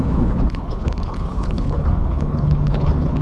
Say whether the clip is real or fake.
fake